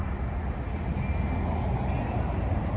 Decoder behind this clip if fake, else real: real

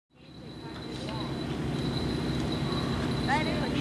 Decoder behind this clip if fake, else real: real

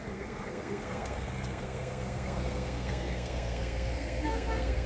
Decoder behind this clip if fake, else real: fake, codec, SNAC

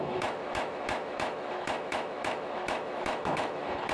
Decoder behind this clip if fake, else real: fake, autoencoder, DAC-VAE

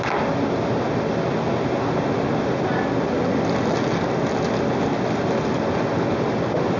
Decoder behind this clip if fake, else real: real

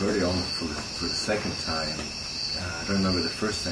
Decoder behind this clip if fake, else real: real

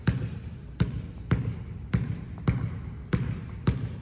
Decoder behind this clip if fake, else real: real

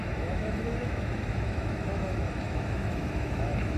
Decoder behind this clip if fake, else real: fake, autoencoder, DAC-VAE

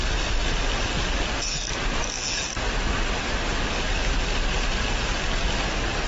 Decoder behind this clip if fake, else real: real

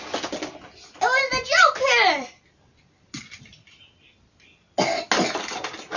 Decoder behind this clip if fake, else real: real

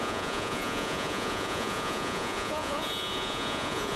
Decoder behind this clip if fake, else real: fake, vocoder, Vocos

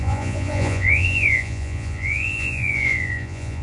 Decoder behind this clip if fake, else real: fake, vocoder, Vocos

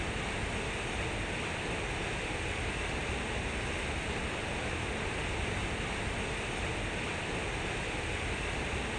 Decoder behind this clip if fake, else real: real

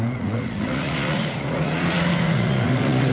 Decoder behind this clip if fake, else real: fake, vocoder, Vocos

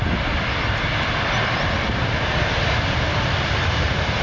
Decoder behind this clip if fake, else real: fake, vocoder, BigVGAN v2